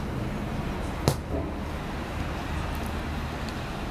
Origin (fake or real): real